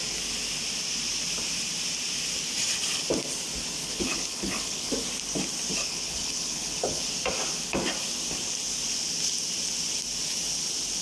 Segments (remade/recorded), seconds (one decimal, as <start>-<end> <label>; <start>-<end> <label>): 0.0-3.8 recorded; 3.8-4.9 remade; 4.9-5.8 recorded; 5.8-7.1 remade; 7.1-11.0 recorded